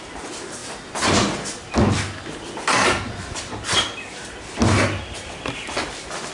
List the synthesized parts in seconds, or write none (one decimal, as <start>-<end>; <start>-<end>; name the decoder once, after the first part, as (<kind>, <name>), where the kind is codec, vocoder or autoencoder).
none